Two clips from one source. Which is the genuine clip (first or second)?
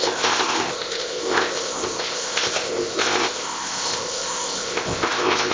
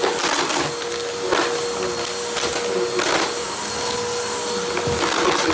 second